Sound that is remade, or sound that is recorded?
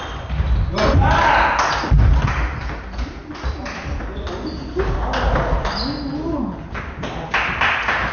recorded